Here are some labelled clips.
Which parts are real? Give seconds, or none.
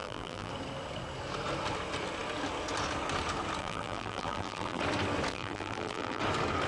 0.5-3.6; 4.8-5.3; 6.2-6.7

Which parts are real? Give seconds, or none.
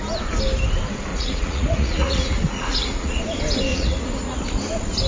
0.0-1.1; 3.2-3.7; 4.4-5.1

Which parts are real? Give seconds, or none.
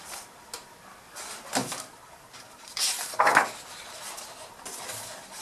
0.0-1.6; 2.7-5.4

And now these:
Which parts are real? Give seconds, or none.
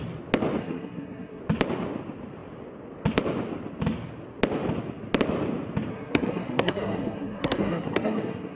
0.0-0.6; 1.4-5.9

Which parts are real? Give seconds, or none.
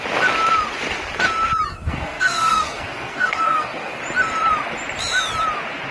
0.0-1.7; 4.0-5.9